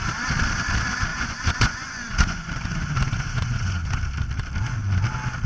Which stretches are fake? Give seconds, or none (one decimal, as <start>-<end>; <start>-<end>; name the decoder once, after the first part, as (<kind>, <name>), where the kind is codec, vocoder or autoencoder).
1.1-4.0 (vocoder, Vocos)